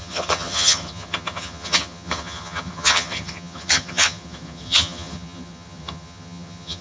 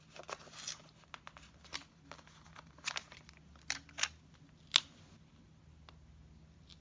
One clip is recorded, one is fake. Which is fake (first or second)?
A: first